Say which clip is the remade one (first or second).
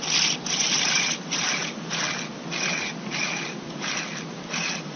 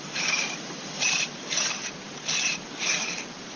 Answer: second